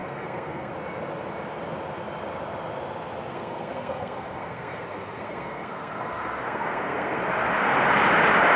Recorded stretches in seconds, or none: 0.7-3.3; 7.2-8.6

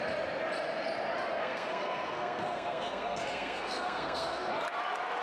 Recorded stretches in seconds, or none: 0.0-1.4; 4.5-5.2

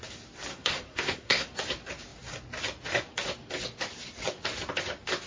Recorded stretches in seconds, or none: 0.0-0.5; 1.5-5.3

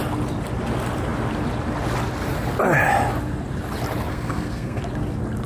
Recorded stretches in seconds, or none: 0.0-4.1; 4.8-5.5

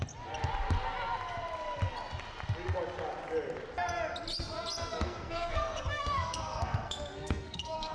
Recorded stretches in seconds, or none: 0.0-4.9

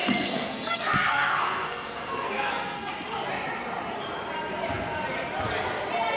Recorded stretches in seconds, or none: 2.9-6.2

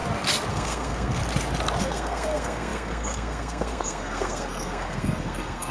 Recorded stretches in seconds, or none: 0.0-0.5; 1.2-1.8